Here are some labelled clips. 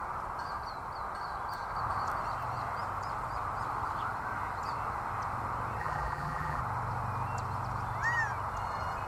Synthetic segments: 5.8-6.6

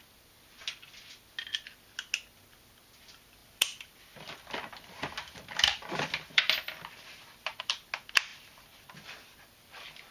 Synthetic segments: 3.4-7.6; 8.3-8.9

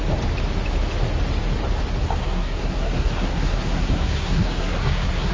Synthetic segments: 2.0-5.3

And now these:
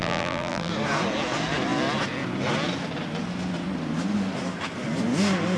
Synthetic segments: 0.0-0.7

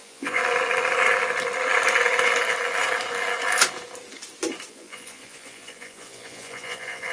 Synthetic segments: 0.0-0.4; 4.7-7.1